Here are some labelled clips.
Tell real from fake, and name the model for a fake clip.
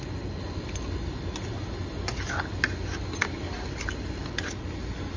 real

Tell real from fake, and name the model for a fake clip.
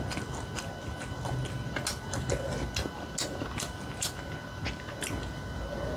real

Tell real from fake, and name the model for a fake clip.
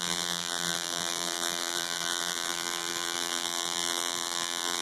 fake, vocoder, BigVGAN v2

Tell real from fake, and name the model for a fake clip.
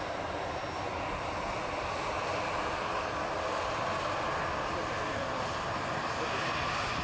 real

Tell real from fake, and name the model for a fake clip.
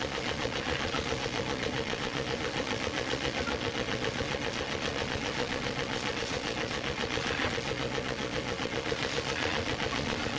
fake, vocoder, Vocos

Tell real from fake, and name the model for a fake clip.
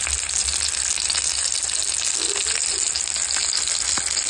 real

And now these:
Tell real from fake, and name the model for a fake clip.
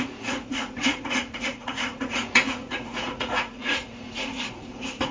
fake, vocoder, Vocos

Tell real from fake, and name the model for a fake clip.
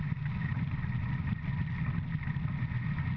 real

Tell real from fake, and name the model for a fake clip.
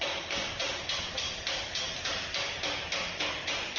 fake, vocoder, BigVGAN v2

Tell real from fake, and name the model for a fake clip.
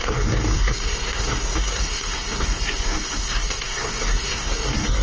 fake, codec, SNAC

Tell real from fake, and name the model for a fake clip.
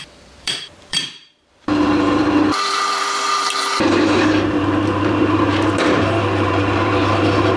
fake, vocoder, BigVGAN v2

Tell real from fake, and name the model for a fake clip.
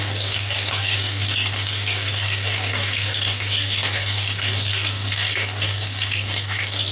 fake, codec, DAC